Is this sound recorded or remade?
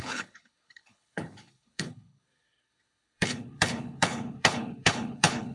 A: remade